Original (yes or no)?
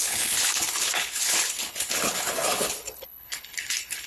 no